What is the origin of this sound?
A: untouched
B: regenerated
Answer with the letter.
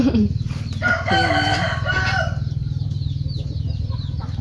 B